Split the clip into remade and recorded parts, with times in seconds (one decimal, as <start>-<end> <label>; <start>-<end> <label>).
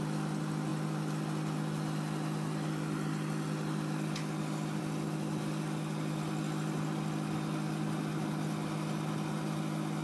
0.0-10.0 recorded